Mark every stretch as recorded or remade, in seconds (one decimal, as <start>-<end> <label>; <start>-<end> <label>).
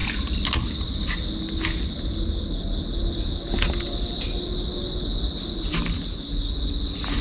0.0-7.2 recorded